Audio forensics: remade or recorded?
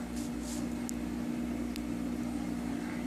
recorded